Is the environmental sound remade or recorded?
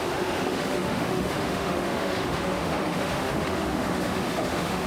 remade